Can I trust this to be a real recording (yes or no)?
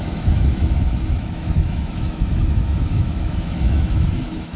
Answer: no